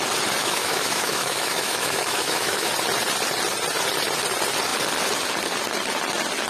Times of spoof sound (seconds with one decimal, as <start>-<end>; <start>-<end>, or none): 0.4-2.7